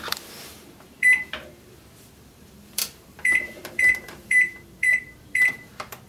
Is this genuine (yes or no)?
no